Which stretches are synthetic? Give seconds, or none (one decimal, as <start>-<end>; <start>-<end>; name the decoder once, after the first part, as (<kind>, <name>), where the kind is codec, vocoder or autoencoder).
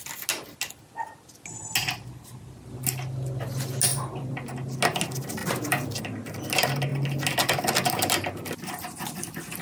3.9-4.5 (vocoder, BigVGAN v2); 5.4-6.0